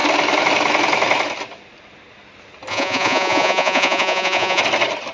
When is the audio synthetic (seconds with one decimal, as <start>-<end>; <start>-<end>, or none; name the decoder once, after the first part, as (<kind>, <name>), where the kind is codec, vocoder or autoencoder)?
2.7-4.6 (vocoder, Vocos)